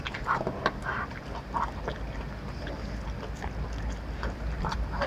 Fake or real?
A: real